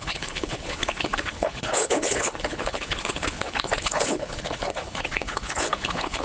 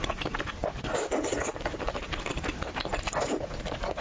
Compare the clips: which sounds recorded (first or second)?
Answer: second